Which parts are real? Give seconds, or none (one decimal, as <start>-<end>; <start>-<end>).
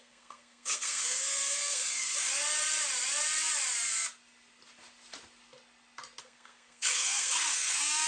2.3-6.2